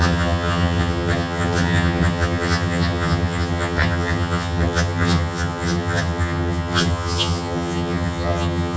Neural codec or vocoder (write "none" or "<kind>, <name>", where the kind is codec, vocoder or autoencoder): vocoder, HiFi-GAN